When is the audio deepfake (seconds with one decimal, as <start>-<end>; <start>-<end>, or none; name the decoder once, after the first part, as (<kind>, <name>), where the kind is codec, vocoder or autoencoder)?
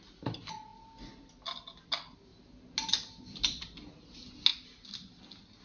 none